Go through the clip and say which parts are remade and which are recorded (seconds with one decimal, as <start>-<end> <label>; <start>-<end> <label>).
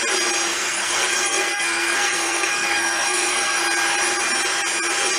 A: 0.0-0.5 recorded; 0.5-3.6 remade; 3.6-5.2 recorded